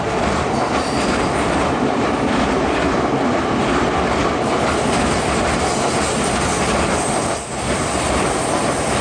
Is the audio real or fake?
real